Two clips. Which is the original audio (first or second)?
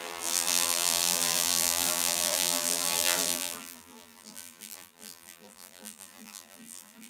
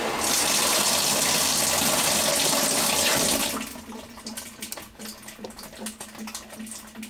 second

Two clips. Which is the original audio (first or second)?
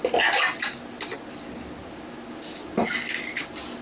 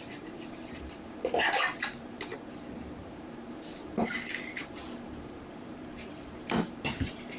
first